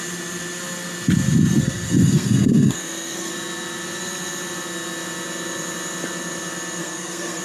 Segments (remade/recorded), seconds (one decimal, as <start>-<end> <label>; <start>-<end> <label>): 0.0-1.6 recorded; 1.6-3.3 remade; 3.3-6.8 recorded; 6.8-7.4 remade